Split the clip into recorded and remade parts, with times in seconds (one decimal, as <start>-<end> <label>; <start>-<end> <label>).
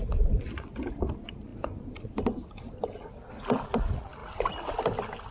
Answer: 0.0-5.3 recorded